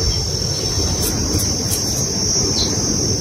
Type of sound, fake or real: real